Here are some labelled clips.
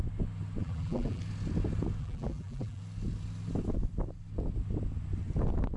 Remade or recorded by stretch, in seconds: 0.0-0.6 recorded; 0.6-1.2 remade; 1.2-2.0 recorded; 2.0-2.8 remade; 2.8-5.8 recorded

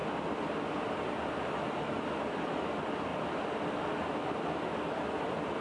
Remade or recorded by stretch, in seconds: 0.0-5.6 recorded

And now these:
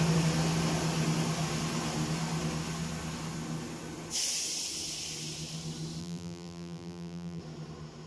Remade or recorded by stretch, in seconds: 0.0-6.0 recorded; 6.0-7.4 remade; 7.4-8.1 recorded